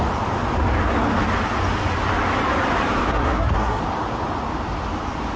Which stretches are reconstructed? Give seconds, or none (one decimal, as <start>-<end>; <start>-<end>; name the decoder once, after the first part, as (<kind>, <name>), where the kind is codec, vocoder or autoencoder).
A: 3.1-3.8 (codec, SNAC)